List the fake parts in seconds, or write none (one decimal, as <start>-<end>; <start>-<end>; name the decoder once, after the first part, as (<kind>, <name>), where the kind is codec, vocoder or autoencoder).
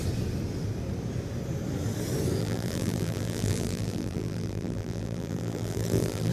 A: 2.4-6.3 (vocoder, BigVGAN v2)